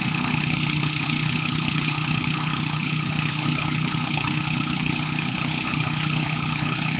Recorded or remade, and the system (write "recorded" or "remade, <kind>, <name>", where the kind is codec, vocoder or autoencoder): remade, codec, HILCodec